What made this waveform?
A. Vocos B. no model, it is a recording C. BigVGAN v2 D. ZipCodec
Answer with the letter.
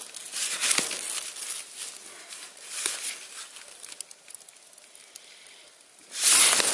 B